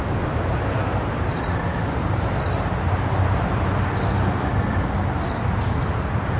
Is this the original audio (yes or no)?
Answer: yes